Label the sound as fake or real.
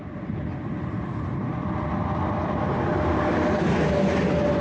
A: real